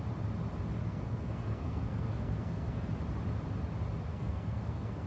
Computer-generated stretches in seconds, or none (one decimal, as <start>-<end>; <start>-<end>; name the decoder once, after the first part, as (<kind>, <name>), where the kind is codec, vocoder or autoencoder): 0.8-2.9 (codec, SNAC); 4.1-5.1